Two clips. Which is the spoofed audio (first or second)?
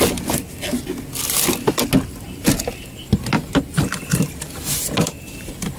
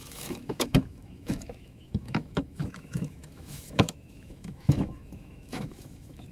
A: second